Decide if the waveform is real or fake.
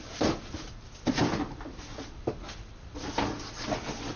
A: real